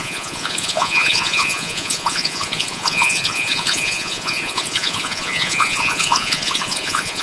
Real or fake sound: fake